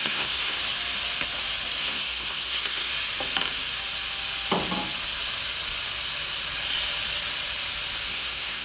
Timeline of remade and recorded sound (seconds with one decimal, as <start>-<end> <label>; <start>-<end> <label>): 0.0-0.6 remade; 0.6-1.8 recorded; 1.8-2.9 remade; 2.9-8.1 recorded; 8.1-8.6 remade